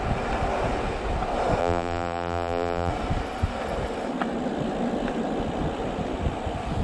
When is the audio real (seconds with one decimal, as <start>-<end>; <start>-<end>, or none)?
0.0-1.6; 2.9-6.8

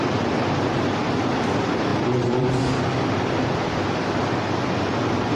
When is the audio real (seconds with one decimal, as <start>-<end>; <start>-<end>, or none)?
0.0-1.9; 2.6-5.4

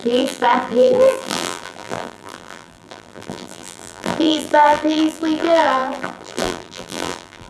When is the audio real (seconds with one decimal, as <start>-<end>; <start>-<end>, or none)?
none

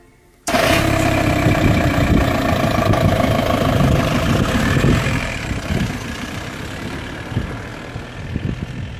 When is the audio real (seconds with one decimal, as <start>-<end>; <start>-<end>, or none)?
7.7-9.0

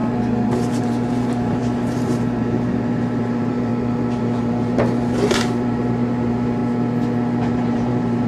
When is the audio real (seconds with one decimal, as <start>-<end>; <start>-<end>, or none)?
0.0-0.7; 3.7-4.2; 6.6-7.5